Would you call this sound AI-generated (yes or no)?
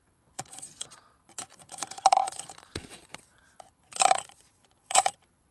yes